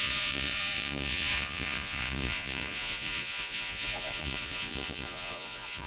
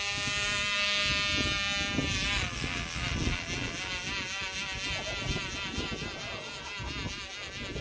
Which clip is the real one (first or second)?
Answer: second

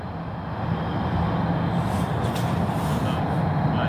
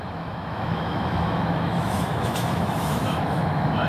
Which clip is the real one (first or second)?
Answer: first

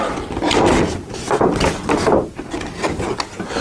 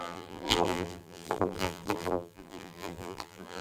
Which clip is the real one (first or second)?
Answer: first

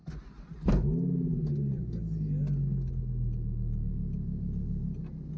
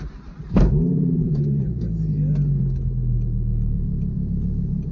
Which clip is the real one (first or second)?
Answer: first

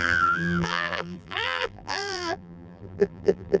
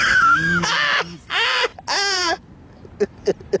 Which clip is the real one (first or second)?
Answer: second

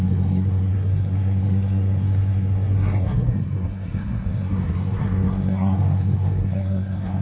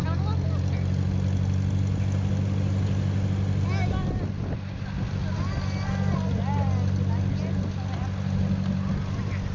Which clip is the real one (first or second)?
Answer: second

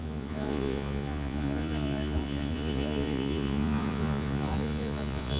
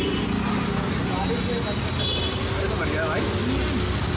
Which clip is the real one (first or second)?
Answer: second